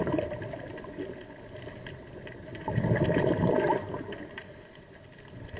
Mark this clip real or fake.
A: real